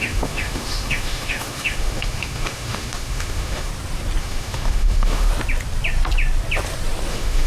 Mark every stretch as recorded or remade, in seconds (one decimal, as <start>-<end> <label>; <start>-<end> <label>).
0.0-3.7 remade; 3.7-4.2 recorded; 4.2-5.3 remade; 5.3-7.1 recorded; 7.1-7.5 remade